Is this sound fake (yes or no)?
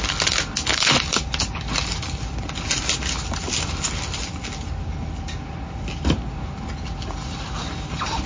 no